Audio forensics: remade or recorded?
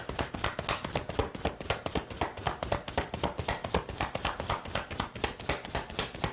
recorded